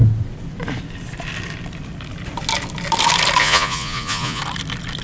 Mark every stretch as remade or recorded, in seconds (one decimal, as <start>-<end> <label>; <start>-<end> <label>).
0.0-3.4 recorded; 3.4-4.4 remade; 4.4-5.0 recorded